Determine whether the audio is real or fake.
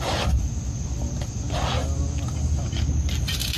real